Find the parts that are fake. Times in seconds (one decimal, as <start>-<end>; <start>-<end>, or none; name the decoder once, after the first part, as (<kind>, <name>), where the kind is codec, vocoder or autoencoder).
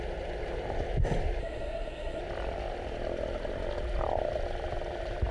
1.4-2.2 (codec, SNAC)